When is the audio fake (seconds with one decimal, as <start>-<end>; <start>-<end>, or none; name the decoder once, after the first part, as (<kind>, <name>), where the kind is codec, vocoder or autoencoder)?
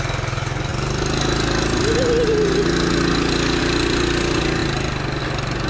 none